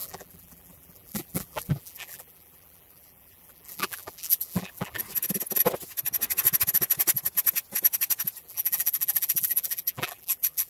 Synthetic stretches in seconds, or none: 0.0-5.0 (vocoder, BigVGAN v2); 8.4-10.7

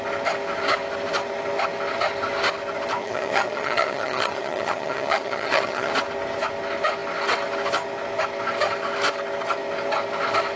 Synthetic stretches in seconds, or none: 3.0-5.9 (vocoder, HiFi-GAN)

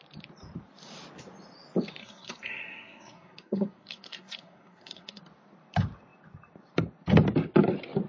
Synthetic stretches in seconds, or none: 2.0-5.2 (codec, SNAC)

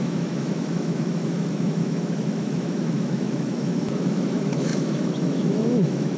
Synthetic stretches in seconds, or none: 0.0-6.2 (autoencoder, DAC-VAE)

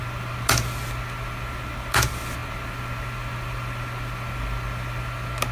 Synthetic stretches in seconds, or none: none